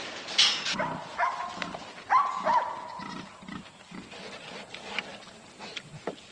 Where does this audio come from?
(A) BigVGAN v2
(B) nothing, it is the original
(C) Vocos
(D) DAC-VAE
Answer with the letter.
B